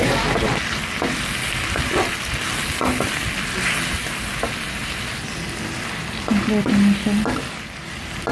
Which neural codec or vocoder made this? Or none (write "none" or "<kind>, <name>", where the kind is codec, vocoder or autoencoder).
none